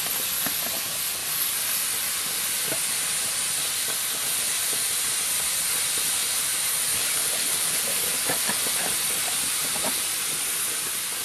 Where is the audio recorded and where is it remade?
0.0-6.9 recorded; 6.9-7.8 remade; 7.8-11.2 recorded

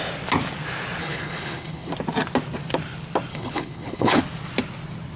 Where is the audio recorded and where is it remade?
0.0-1.0 recorded; 1.0-1.9 remade; 1.9-3.3 recorded; 3.3-4.2 remade; 4.2-5.2 recorded